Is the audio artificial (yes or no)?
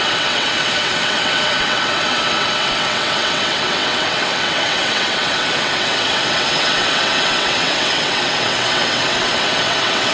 yes